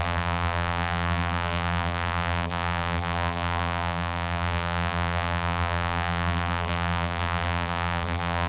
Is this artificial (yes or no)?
yes